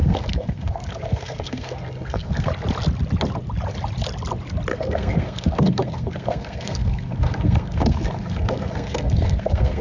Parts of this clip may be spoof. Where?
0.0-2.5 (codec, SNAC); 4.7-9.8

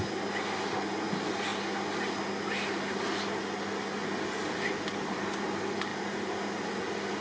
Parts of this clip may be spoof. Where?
none

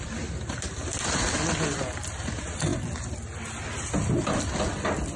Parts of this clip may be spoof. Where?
none

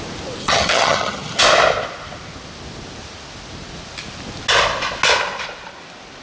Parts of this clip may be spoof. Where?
0.4-1.4 (vocoder, HiFi-GAN)

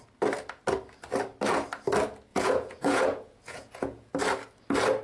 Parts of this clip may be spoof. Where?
2.3-4.1 (vocoder, Vocos)

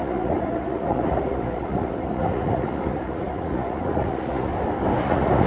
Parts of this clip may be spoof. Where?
0.0-4.5 (vocoder, Vocos); 5.0-5.5

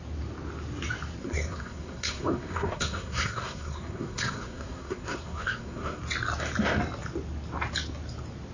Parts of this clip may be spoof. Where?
1.2-6.0 (codec, SNAC)